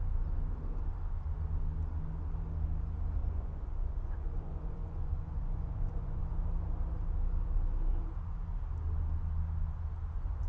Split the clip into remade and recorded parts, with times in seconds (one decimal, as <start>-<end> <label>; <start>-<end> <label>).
0.0-3.2 recorded; 3.2-6.2 remade; 6.2-10.5 recorded